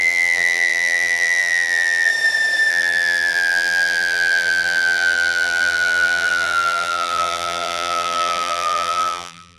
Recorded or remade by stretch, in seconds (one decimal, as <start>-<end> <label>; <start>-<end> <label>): 0.0-2.1 remade; 2.1-2.7 recorded; 2.7-9.6 remade